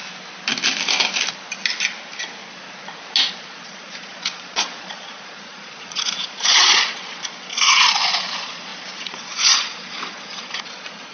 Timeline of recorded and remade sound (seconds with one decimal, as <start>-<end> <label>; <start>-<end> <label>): 0.0-3.3 recorded; 3.3-11.1 remade